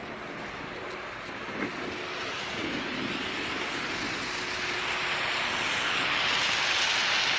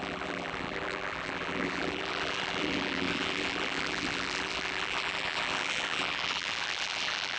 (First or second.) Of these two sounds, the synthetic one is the second